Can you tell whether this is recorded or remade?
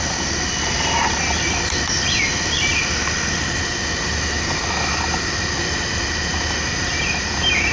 recorded